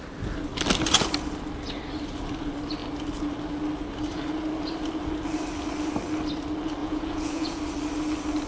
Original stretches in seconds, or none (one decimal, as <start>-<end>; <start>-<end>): 0.0-6.8; 7.6-8.5